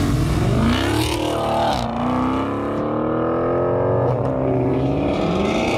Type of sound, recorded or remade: recorded